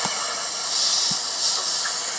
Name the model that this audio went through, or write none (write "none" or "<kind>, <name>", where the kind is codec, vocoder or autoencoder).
none